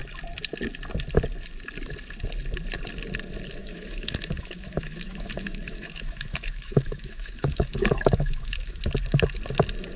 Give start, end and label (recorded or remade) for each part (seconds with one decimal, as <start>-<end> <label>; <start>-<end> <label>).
0.0-3.6 recorded; 3.6-8.8 remade; 8.8-10.0 recorded